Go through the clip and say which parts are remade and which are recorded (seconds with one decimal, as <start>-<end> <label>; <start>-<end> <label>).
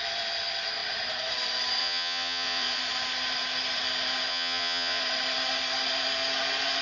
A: 0.0-1.8 recorded; 1.8-2.8 remade; 2.8-4.3 recorded; 4.3-5.0 remade; 5.0-6.8 recorded